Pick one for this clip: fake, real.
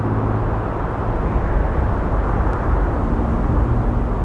real